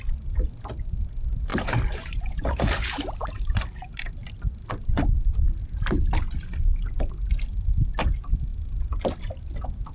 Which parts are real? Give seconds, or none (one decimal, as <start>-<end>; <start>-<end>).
0.0-1.5; 4.3-9.9

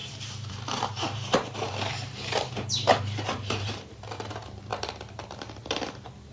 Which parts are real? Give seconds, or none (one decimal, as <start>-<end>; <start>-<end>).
3.8-6.3

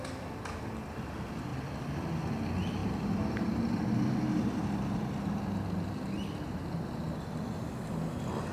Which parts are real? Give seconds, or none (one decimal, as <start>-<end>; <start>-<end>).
0.0-1.5; 2.1-2.8; 5.1-8.5

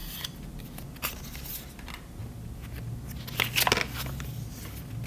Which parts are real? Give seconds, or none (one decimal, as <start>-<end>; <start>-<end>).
0.0-5.1

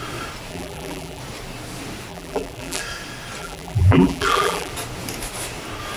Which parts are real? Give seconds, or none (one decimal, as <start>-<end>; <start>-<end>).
0.0-0.5; 1.2-2.1; 2.8-3.4; 4.7-6.0

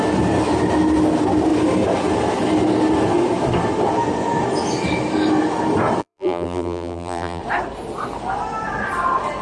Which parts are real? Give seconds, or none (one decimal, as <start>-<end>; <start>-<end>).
0.0-6.0; 7.4-9.4

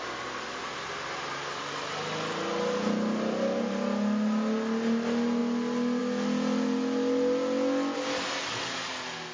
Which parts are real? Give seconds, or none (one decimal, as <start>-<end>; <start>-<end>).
0.0-9.3